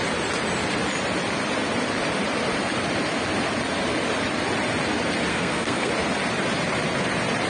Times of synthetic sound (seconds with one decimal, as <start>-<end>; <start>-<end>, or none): 5.3-5.9